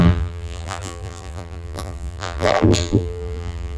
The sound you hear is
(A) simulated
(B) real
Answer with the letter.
A